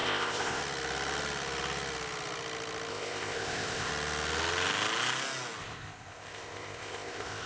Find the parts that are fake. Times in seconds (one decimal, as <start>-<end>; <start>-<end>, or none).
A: 0.0-0.6; 2.9-3.9; 5.6-7.5